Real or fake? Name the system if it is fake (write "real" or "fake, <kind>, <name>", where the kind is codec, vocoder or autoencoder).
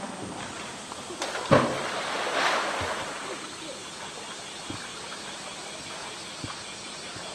real